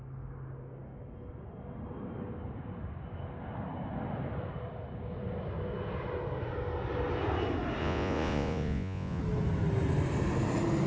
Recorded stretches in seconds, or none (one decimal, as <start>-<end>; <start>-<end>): 0.0-7.8; 9.2-10.9